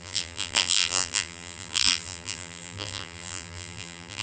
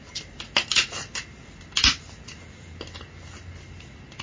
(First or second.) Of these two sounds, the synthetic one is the first